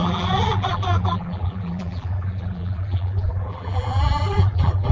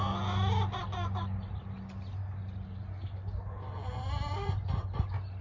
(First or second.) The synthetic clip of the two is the first